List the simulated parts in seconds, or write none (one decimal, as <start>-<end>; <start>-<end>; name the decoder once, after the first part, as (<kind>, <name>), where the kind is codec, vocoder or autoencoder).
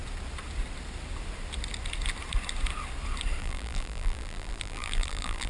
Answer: 3.4-5.5 (vocoder, BigVGAN v2)